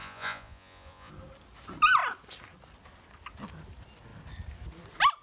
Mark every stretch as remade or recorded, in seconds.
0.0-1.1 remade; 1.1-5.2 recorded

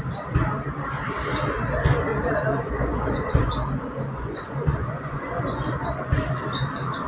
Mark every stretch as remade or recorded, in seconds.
0.0-2.1 recorded; 2.1-3.5 remade; 3.5-4.1 recorded; 4.1-5.7 remade; 5.7-7.1 recorded

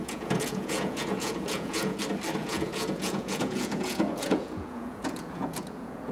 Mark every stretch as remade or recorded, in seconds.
0.0-2.0 remade; 2.0-2.4 recorded; 2.4-6.1 remade